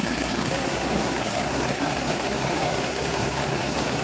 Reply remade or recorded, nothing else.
remade